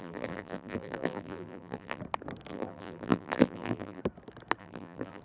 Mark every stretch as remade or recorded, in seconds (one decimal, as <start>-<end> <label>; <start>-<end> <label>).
0.0-2.0 remade; 2.0-2.5 recorded; 2.5-4.0 remade; 4.0-4.6 recorded; 4.6-5.2 remade